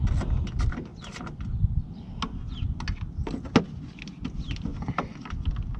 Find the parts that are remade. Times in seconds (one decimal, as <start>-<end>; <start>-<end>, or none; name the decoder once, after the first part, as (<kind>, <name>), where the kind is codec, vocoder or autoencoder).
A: none